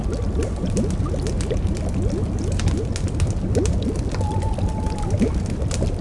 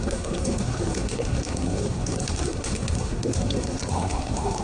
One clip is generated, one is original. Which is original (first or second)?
first